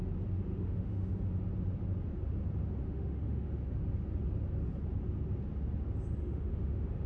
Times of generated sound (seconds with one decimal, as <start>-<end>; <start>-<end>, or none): 0.5-1.1; 2.8-3.5; 6.2-7.1